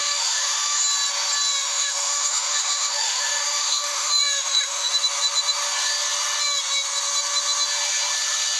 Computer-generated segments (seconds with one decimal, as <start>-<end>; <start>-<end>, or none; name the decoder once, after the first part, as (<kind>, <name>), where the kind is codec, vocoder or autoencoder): 0.0-0.8 (autoencoder, DAC-VAE); 1.6-4.9